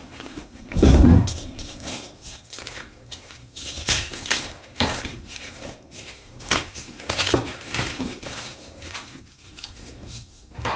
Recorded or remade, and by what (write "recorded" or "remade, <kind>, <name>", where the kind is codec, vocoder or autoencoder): remade, codec, SNAC